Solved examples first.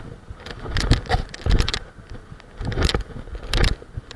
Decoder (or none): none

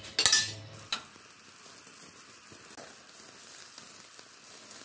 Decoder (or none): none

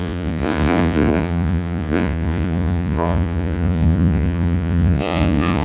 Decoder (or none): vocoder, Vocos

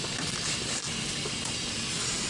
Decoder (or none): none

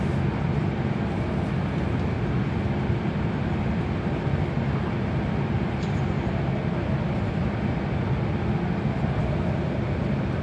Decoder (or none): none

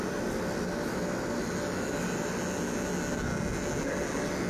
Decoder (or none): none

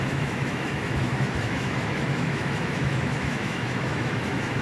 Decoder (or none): autoencoder, DAC-VAE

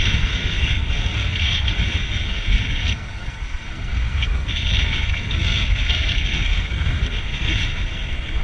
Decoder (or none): codec, SNAC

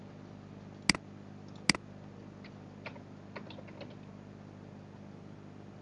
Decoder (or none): none